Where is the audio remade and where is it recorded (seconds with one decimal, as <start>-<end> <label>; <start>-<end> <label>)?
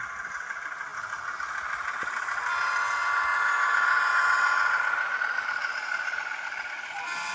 0.0-7.3 recorded